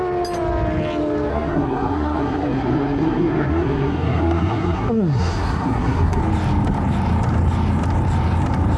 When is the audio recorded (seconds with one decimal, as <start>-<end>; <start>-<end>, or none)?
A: 0.0-1.3; 6.2-8.8